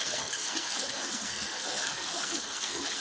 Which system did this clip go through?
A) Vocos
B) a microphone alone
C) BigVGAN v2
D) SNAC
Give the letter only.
D